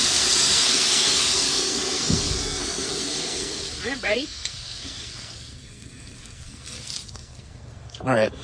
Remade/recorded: remade